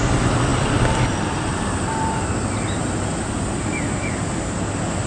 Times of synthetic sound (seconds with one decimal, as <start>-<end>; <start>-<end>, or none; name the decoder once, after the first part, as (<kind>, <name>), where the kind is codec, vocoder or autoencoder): 0.5-2.3 (vocoder, BigVGAN v2)